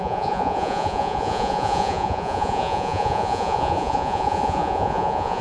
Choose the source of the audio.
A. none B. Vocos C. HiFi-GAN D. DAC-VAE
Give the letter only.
B